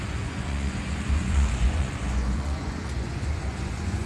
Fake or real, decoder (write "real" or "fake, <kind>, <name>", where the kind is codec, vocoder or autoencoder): fake, vocoder, Vocos